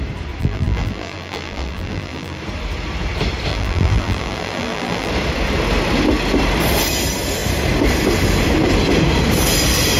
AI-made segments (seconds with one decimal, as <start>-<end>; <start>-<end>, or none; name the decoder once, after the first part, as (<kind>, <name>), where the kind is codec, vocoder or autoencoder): 0.4-2.4 (vocoder, BigVGAN v2); 3.5-5.1